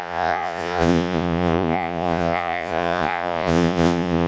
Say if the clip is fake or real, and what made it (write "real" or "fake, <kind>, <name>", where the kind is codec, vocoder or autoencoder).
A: fake, vocoder, Vocos